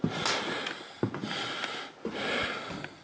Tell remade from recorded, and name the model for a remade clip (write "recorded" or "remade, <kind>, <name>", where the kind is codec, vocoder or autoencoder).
recorded